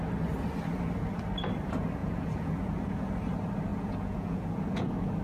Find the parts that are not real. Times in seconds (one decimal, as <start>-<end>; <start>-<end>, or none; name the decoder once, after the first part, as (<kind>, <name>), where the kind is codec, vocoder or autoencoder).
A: 2.0-3.1 (vocoder, Vocos); 3.7-5.2